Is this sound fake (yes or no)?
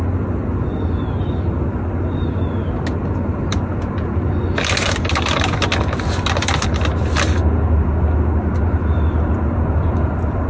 no